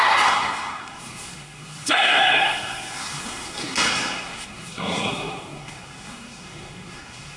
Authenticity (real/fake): fake